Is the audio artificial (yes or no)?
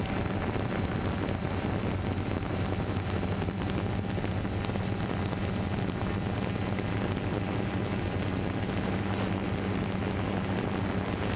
no